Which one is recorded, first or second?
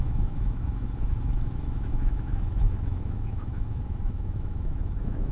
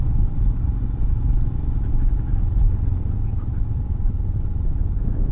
second